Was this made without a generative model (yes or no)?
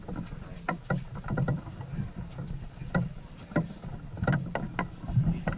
yes